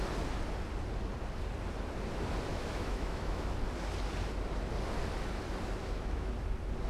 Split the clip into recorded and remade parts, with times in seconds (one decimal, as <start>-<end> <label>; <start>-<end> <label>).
0.0-2.5 recorded; 2.5-3.5 remade; 3.5-5.8 recorded; 5.8-6.3 remade; 6.3-6.9 recorded